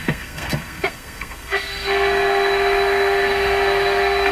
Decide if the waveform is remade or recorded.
remade